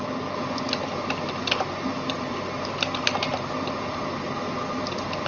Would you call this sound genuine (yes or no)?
yes